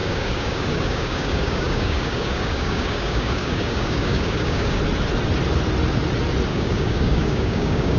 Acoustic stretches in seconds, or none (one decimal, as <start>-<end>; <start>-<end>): 4.8-6.5